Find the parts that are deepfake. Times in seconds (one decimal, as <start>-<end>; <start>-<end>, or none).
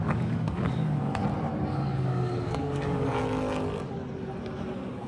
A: 0.0-1.2; 1.7-3.2